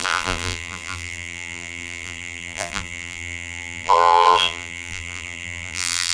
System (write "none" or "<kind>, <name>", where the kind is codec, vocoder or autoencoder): vocoder, BigVGAN v2